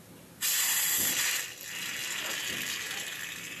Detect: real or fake real